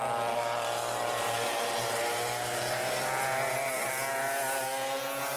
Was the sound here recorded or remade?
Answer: recorded